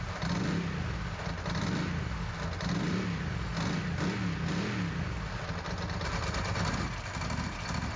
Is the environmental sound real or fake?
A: real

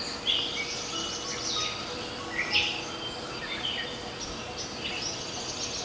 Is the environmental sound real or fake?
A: real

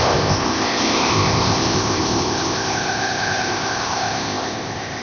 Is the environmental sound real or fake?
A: fake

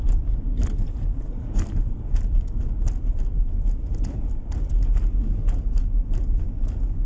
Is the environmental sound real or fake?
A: fake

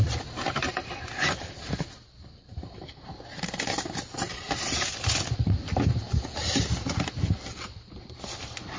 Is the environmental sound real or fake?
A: real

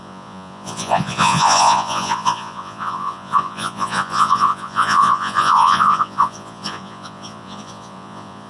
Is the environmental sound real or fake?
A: fake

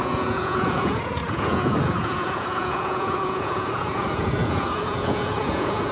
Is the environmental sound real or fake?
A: fake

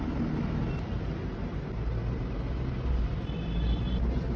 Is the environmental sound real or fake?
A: real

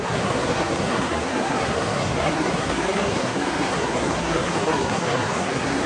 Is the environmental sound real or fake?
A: fake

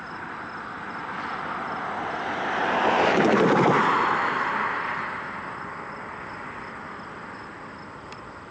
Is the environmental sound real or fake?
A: real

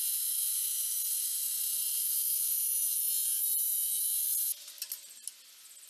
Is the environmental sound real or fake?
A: real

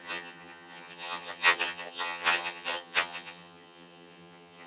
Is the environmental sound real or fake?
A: fake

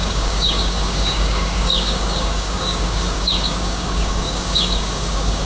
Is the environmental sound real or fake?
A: fake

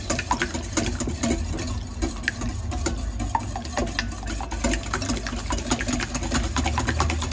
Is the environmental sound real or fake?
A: real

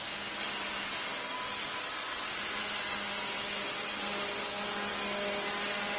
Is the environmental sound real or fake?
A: real